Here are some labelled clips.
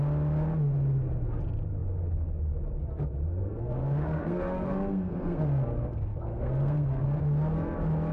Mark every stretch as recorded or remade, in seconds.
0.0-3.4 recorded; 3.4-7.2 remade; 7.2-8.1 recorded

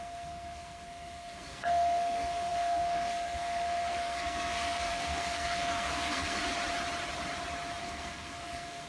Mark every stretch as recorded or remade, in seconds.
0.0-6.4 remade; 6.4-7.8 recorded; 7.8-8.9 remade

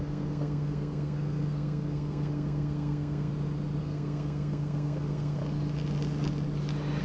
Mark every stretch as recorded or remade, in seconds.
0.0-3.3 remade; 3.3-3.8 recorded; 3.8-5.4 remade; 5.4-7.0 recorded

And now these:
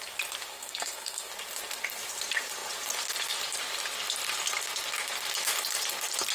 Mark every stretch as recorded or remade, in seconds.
0.0-0.5 recorded; 0.5-1.3 remade; 1.3-6.3 recorded

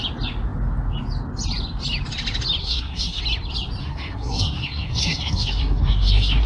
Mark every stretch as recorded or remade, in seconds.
0.0-2.6 recorded; 2.6-3.2 remade; 3.2-3.8 recorded; 3.8-6.5 remade

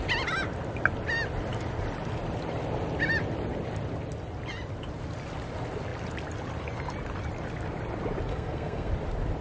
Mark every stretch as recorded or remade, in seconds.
0.0-8.3 recorded; 8.3-8.9 remade; 8.9-9.4 recorded